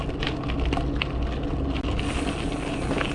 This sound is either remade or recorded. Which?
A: recorded